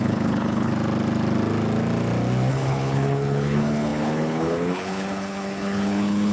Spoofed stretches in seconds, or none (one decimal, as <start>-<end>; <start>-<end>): 0.0-0.7; 2.5-6.3